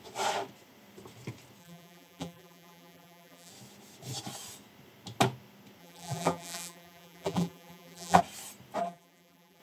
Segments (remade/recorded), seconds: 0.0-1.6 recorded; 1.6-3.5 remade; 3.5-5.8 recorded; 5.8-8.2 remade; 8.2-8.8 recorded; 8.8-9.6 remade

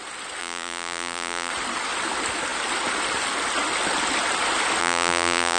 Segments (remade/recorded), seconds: 0.0-0.4 recorded; 0.4-1.5 remade; 1.5-4.8 recorded; 4.8-5.6 remade

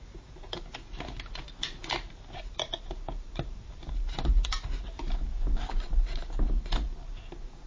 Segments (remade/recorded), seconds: 0.0-1.8 recorded; 1.8-5.7 remade; 5.7-7.7 recorded